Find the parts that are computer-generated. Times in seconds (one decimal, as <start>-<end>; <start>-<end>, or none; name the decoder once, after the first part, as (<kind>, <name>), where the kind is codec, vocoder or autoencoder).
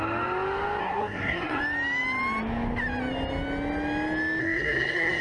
0.8-1.6 (codec, SNAC); 4.4-5.2